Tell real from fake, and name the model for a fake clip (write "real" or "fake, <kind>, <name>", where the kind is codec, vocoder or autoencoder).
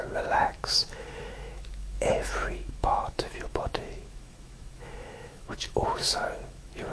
fake, autoencoder, DAC-VAE